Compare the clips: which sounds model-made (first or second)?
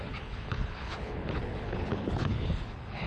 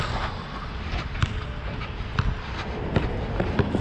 first